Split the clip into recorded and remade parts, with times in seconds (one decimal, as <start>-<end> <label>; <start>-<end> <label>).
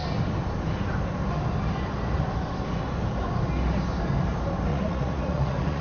0.0-4.7 recorded; 4.7-5.8 remade